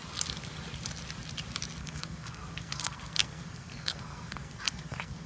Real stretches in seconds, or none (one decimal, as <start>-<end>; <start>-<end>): 0.0-1.8